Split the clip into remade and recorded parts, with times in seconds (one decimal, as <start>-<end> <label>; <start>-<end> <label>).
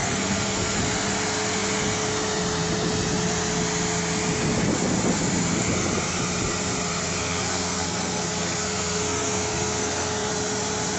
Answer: 0.0-0.8 remade; 0.8-7.2 recorded; 7.2-10.3 remade; 10.3-11.0 recorded